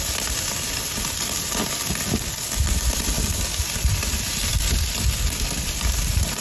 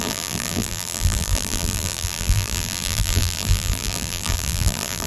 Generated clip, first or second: second